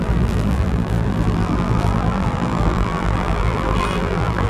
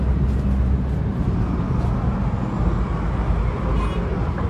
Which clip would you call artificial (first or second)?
first